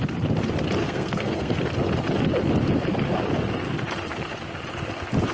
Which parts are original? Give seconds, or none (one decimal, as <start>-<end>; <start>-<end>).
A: 0.0-0.8; 1.6-5.3